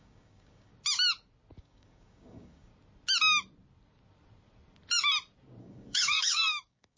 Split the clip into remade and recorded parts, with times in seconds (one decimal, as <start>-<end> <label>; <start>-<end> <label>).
0.0-0.7 remade; 0.7-1.6 recorded; 1.6-2.7 remade; 2.7-5.6 recorded; 5.6-7.0 remade